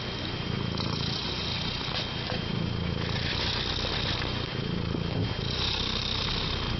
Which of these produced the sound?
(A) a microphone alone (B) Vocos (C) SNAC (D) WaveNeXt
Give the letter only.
A